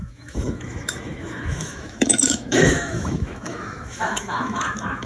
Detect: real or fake fake